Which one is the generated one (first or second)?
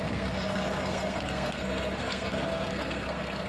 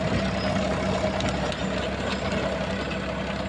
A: first